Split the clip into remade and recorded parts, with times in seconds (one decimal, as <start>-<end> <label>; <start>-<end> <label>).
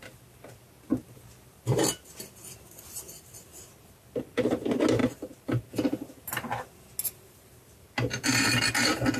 0.0-9.2 recorded